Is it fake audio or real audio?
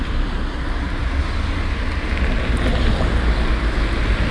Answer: real